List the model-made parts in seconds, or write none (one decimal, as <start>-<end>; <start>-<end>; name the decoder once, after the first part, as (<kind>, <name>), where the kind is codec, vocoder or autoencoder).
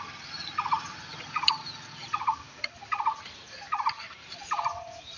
1.1-1.6 (vocoder, BigVGAN v2); 2.0-5.2